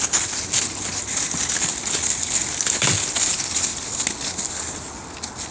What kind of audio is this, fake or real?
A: real